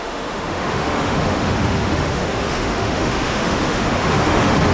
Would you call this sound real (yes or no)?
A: no